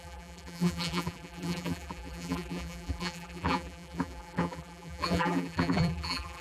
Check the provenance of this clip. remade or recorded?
remade